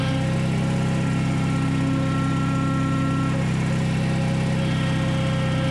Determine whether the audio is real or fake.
real